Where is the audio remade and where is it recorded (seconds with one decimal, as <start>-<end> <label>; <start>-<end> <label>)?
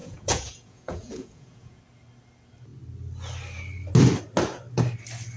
0.0-1.8 remade; 1.8-5.4 recorded